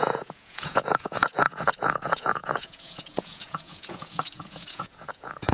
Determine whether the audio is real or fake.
fake